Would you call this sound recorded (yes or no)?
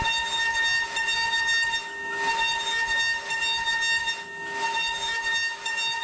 yes